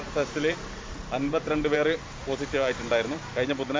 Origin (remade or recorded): remade